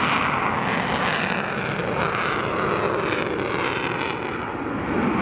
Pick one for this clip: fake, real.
real